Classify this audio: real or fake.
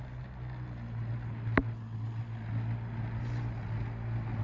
real